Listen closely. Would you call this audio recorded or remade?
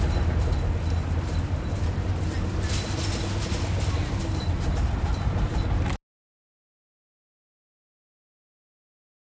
recorded